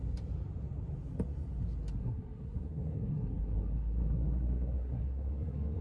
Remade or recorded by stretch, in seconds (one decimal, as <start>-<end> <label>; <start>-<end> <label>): 0.0-2.0 recorded; 2.0-5.8 remade